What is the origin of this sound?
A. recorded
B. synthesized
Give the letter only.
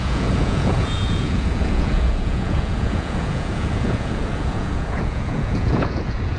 B